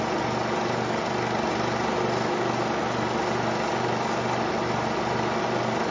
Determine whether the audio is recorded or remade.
recorded